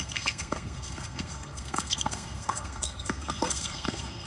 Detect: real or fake fake